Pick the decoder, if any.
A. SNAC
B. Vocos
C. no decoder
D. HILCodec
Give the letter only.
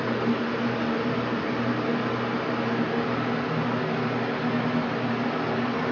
C